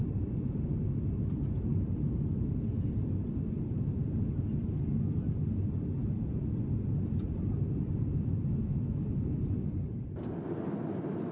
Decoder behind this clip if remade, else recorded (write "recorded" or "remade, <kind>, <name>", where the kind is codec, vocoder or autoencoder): recorded